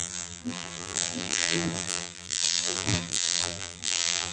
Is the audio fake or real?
fake